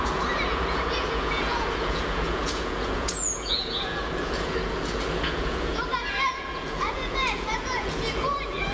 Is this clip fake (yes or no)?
yes